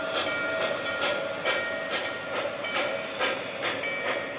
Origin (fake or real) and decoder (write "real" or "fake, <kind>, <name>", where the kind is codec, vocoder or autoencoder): real